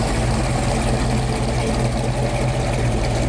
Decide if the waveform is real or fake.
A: real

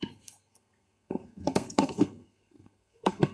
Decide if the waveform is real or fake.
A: fake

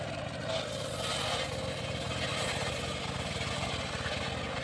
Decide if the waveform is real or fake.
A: real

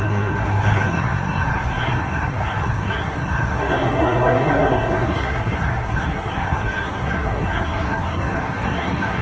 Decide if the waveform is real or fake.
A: fake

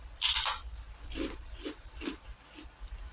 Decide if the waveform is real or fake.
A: real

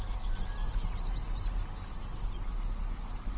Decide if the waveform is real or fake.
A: real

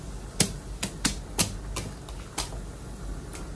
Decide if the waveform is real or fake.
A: real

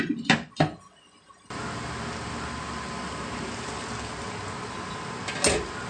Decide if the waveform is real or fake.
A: real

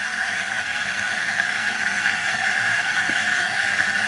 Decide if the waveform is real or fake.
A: fake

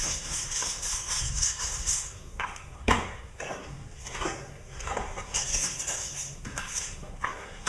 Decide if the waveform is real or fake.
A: fake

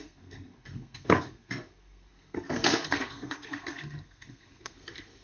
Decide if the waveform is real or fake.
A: fake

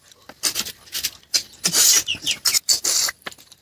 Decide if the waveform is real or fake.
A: real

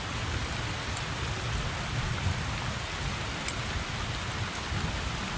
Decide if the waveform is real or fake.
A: real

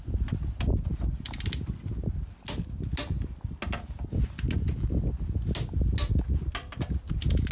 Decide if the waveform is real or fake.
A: real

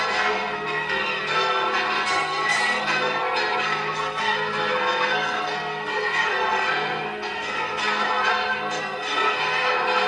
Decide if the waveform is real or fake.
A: fake